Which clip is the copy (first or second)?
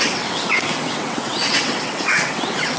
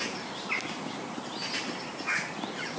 first